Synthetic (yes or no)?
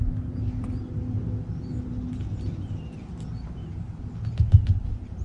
no